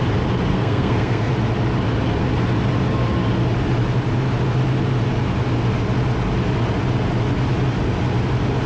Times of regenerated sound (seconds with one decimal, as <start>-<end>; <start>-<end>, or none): 0.5-1.3